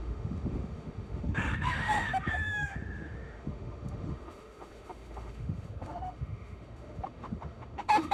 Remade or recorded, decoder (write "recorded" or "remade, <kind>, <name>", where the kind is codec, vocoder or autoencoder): remade, autoencoder, DAC-VAE